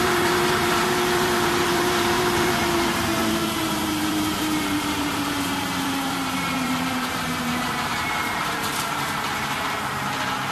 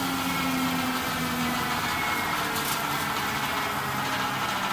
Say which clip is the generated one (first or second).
first